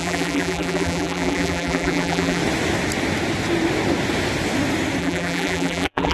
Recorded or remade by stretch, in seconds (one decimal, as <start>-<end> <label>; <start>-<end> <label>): 0.0-2.4 remade; 2.4-5.0 recorded; 5.0-6.1 remade